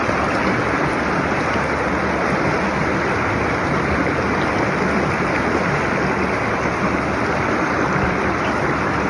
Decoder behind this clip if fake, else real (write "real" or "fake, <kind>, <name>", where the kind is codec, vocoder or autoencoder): real